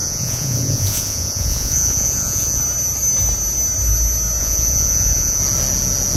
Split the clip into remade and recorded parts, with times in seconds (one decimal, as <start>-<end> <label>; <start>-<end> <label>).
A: 0.0-2.6 remade; 2.6-4.4 recorded; 4.4-5.4 remade; 5.4-6.2 recorded